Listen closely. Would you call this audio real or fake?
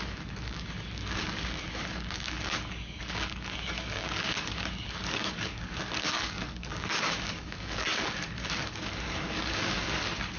fake